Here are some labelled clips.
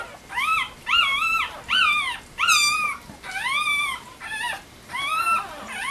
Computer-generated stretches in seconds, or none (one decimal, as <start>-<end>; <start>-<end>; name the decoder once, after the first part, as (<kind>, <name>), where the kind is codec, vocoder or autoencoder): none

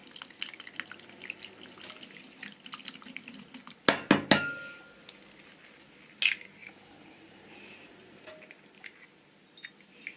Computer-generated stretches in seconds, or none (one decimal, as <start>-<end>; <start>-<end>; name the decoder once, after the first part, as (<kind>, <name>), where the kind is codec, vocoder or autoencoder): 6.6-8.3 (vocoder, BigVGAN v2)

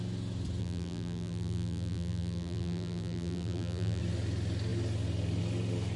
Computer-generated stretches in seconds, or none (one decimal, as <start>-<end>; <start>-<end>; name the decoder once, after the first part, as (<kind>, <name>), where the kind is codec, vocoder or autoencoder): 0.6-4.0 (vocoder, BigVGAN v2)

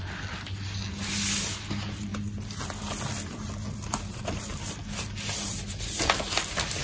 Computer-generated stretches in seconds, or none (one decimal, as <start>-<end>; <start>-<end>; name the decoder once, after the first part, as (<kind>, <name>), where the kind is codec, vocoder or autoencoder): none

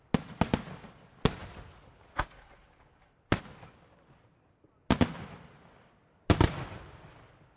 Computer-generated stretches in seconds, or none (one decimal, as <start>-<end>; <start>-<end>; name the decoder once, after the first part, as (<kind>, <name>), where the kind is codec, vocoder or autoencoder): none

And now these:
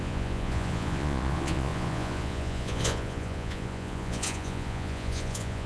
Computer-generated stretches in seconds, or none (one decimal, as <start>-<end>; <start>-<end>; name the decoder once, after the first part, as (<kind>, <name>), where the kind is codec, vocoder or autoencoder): 0.0-5.7 (vocoder, Vocos)